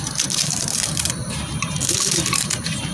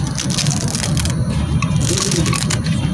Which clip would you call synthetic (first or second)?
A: first